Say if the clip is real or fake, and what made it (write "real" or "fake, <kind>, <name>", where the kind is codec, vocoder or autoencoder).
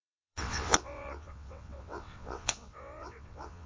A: fake, vocoder, WaveNeXt